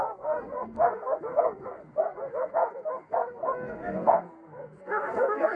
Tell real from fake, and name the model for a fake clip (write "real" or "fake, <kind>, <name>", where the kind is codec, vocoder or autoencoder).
fake, codec, SNAC